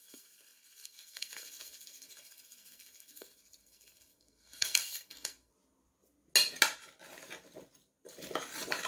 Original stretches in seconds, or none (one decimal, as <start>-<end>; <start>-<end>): 5.5-8.9